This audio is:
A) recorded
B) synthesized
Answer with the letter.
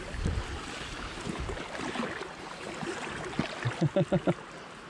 A